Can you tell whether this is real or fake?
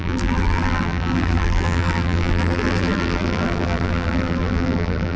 fake